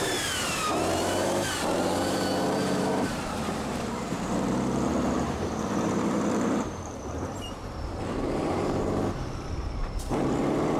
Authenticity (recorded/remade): remade